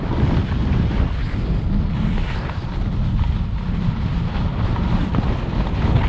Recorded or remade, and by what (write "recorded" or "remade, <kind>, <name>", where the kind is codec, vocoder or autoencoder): recorded